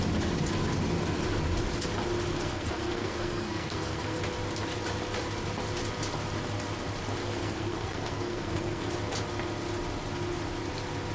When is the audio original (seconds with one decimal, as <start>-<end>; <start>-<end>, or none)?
0.0-2.3; 4.2-7.2; 8.9-11.1